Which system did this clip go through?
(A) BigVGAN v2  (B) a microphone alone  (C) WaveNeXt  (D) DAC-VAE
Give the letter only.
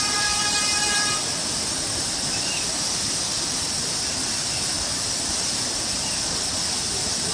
A